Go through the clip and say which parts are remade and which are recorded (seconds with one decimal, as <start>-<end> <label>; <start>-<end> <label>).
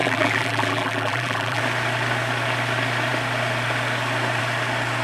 0.0-1.6 remade; 1.6-5.0 recorded